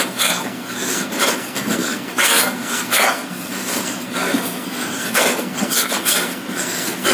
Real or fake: fake